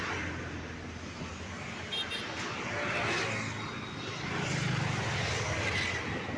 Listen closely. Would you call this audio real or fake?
real